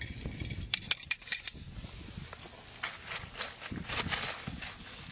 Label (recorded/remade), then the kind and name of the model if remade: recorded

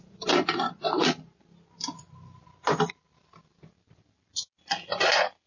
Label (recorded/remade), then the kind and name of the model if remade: recorded